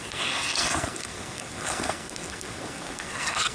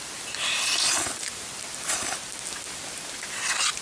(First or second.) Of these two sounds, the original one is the second